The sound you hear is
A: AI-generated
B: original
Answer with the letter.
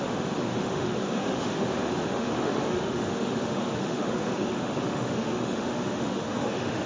A